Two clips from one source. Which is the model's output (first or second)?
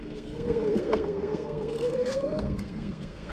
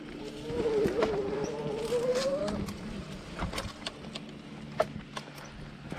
first